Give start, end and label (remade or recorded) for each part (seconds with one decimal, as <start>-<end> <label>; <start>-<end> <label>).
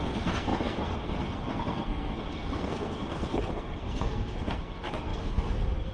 0.0-5.9 remade